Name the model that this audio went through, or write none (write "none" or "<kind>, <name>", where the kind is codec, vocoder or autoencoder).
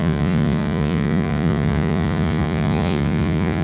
vocoder, Vocos